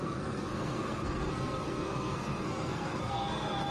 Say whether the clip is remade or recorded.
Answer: remade